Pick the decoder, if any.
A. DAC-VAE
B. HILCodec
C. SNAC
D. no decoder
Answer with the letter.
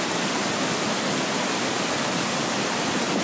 D